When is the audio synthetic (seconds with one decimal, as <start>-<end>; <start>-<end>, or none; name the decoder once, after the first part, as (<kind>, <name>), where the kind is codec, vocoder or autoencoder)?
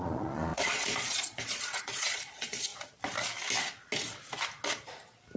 0.0-2.7 (vocoder, Vocos)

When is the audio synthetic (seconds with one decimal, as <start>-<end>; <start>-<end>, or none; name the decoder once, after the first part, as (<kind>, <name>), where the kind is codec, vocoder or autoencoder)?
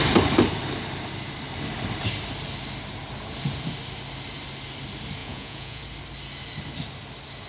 5.2-5.8 (vocoder, Vocos)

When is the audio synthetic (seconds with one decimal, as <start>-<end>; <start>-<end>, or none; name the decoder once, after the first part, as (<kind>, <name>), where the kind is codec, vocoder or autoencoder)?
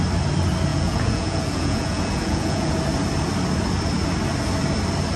0.7-2.7 (vocoder, Vocos)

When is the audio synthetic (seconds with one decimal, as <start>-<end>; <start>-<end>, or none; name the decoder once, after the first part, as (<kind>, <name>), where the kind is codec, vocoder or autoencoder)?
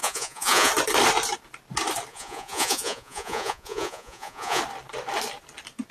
0.0-0.7 (vocoder, Vocos); 2.1-4.6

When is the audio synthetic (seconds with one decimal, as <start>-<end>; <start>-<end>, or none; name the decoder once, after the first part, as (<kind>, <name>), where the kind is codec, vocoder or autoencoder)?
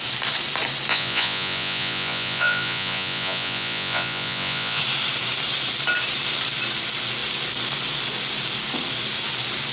0.9-4.8 (vocoder, Vocos)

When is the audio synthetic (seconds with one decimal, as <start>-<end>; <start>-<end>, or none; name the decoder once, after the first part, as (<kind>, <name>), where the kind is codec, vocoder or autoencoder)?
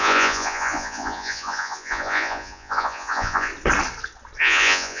0.0-3.5 (vocoder, Vocos); 4.4-5.0